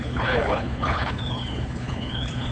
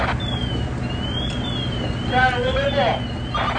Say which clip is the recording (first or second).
second